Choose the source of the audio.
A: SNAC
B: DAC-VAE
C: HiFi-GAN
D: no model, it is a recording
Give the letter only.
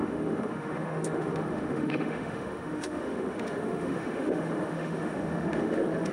B